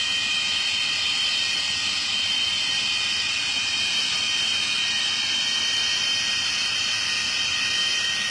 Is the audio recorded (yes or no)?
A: yes